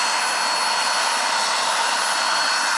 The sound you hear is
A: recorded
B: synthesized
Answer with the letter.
A